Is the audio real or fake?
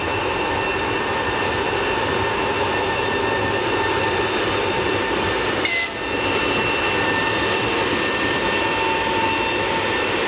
real